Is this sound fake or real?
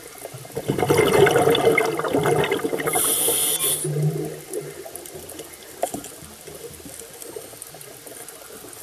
real